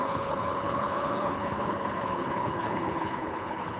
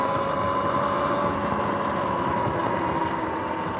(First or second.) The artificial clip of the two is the first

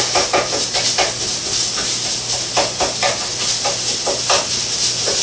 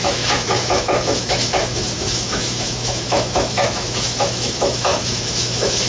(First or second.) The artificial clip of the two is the second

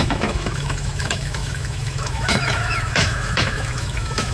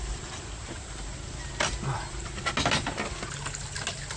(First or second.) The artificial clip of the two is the first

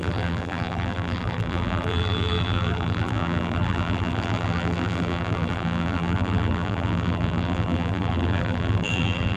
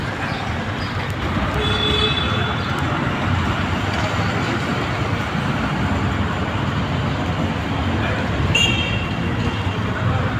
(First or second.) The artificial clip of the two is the first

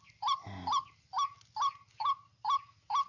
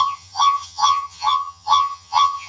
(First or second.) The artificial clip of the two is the second